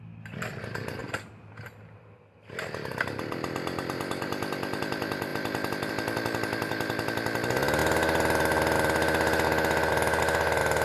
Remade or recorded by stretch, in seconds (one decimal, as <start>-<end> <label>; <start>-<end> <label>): 0.0-1.0 recorded; 1.0-4.8 remade; 4.8-5.3 recorded; 5.3-5.9 remade; 5.9-10.8 recorded